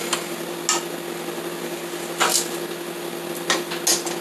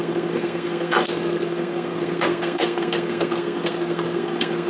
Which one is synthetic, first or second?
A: second